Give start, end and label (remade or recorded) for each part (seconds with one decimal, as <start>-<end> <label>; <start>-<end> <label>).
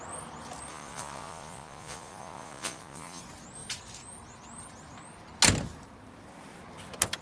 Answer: 0.0-0.7 recorded; 0.7-3.2 remade; 3.2-7.2 recorded